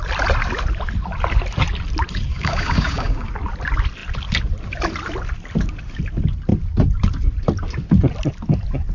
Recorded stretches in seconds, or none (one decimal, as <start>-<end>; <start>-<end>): 0.0-2.3; 3.3-8.9